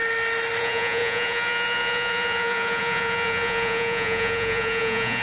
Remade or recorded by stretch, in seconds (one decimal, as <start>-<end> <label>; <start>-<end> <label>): 0.0-0.6 recorded; 0.6-5.2 remade